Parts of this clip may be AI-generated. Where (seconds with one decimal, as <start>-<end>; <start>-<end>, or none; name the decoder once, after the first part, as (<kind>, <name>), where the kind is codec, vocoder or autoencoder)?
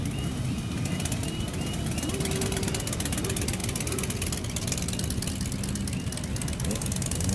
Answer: none